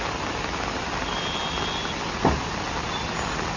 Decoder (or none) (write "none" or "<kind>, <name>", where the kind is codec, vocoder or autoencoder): none